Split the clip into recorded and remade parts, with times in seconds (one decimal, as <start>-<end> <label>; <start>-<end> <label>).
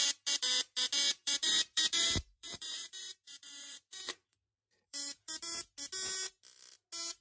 0.0-1.1 recorded; 1.1-5.4 remade; 5.4-7.2 recorded